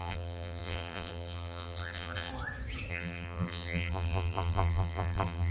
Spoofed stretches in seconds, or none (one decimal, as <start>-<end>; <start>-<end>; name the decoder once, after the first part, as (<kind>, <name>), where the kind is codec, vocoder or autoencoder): 0.0-2.3 (vocoder, BigVGAN v2); 2.9-5.5